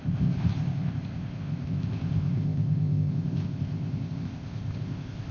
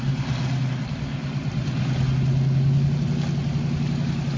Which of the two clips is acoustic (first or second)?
second